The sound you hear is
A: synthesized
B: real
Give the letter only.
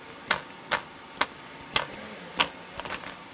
B